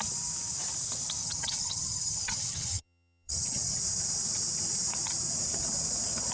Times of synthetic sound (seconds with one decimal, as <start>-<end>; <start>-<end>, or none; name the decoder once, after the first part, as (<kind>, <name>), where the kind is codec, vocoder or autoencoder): 1.2-3.8 (vocoder, HiFi-GAN)